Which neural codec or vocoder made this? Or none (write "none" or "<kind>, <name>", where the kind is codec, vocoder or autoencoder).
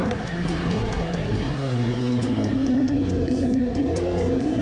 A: codec, SNAC